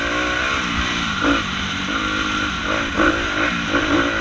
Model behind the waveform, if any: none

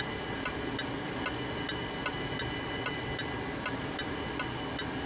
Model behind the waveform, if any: none